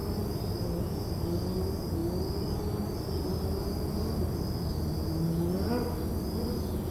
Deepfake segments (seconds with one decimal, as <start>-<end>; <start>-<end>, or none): 0.0-1.2